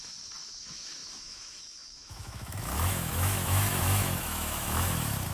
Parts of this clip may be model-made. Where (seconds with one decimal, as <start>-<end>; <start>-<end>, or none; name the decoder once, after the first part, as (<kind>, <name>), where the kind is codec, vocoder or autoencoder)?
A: 0.0-5.3 (autoencoder, DAC-VAE)